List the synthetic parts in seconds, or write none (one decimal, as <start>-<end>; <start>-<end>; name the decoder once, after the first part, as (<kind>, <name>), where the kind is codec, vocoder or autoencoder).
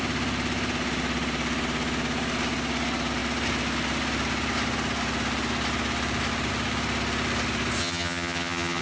7.8-8.8 (vocoder, HiFi-GAN)